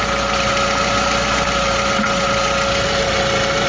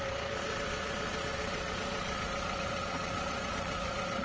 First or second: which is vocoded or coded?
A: second